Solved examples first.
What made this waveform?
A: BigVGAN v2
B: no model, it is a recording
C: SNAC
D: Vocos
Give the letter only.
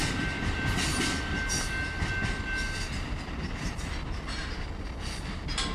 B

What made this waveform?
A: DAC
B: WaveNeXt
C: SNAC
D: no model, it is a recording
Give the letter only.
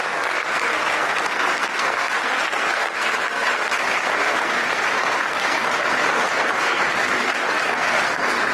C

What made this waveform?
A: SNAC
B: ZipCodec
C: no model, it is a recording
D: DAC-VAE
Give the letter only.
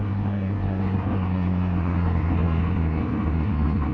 A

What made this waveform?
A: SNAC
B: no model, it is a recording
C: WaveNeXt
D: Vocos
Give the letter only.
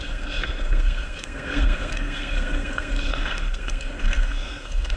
A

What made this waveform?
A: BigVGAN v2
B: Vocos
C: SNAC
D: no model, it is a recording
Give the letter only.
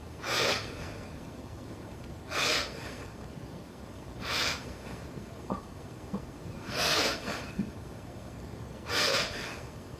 C